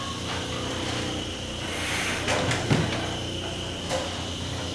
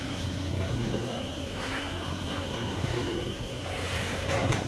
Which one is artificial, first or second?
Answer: second